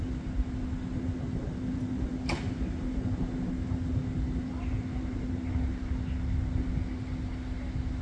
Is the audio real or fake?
real